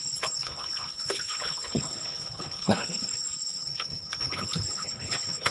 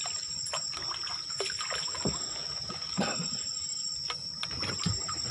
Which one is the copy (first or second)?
first